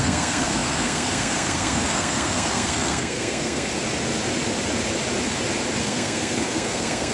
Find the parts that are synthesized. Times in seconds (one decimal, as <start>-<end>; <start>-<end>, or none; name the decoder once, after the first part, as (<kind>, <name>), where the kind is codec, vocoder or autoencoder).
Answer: 0.0-3.7 (codec, SNAC); 5.8-7.1